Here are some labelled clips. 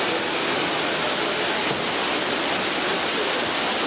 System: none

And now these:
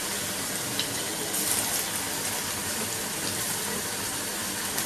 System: none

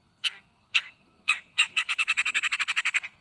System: codec, SNAC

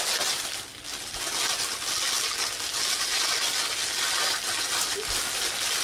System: none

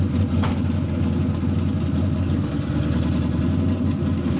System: none